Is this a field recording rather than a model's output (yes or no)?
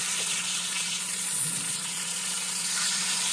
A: no